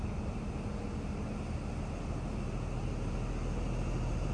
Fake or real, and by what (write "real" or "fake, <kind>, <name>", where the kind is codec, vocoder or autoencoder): real